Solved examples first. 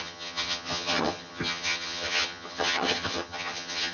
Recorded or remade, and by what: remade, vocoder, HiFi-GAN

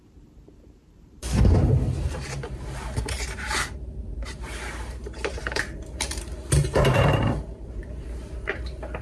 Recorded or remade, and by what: remade, vocoder, BigVGAN v2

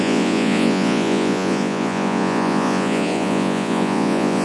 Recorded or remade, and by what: remade, vocoder, Vocos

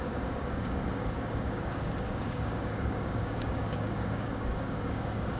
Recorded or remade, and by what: remade, codec, DAC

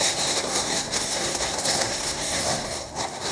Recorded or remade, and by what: remade, codec, SNAC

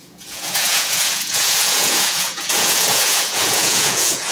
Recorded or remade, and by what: remade, vocoder, Vocos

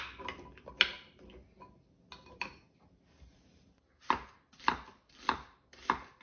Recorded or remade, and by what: recorded